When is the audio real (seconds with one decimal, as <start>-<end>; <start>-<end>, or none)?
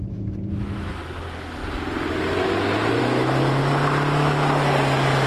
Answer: 1.0-3.0; 3.6-5.3